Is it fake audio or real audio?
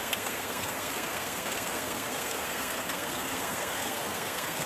fake